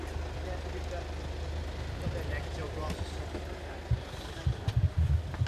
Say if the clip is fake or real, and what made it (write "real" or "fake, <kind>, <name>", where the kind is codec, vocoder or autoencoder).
real